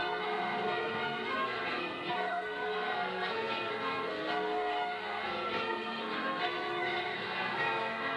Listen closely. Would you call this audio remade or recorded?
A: remade